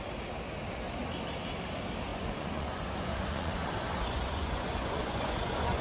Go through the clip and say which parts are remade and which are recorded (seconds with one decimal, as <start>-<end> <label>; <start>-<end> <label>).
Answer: 0.0-2.1 recorded; 2.1-5.8 remade